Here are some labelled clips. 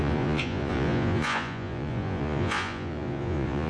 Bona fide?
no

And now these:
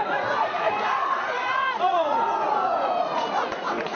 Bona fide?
no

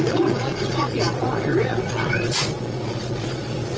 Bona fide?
no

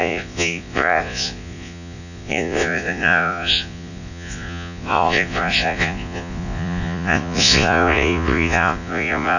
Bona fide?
no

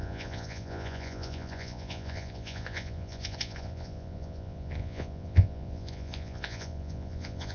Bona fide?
no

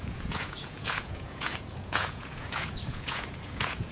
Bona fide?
no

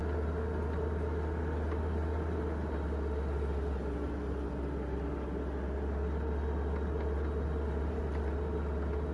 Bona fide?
yes